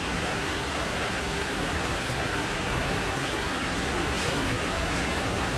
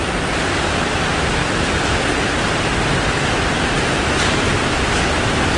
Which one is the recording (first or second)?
second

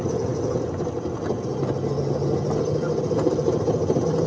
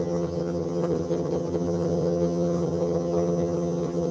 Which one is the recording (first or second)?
first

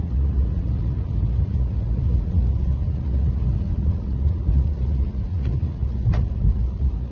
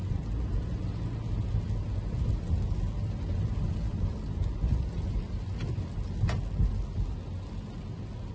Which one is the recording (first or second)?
second